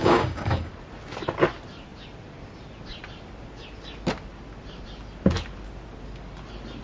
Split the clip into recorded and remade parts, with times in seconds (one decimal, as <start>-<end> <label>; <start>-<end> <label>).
0.0-0.7 remade; 0.7-6.8 recorded